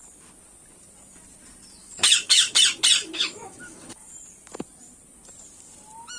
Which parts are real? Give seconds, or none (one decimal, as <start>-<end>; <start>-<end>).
0.0-1.8; 2.6-3.0; 4.1-6.2